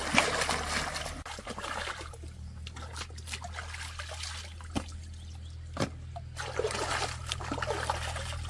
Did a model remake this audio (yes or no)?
no